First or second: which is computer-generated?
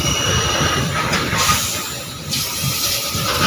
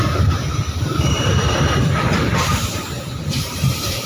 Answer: second